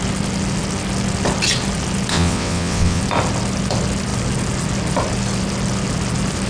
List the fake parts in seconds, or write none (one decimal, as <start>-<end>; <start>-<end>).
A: 2.1-3.0